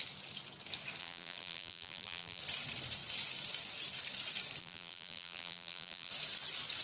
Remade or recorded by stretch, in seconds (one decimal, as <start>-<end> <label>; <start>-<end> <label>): 0.0-1.0 recorded; 1.0-2.4 remade; 2.4-4.6 recorded; 4.6-6.1 remade; 6.1-6.8 recorded